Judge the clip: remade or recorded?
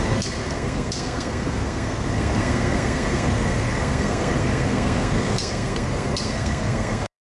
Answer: remade